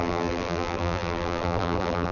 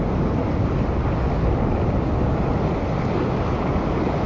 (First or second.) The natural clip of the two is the second